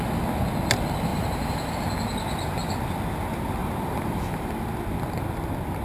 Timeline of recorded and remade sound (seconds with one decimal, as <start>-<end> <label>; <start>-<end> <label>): 0.0-1.1 recorded; 1.1-1.7 remade; 1.7-3.6 recorded; 3.6-4.5 remade; 4.5-5.8 recorded